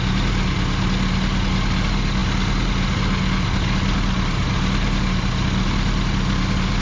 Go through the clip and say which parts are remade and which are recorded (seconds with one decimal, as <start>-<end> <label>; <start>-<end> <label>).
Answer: 0.0-6.8 recorded